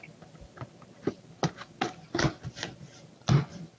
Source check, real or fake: real